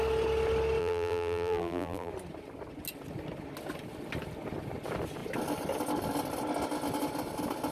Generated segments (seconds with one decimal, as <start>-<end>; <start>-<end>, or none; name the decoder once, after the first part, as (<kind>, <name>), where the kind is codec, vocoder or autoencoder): 0.8-2.1 (vocoder, BigVGAN v2)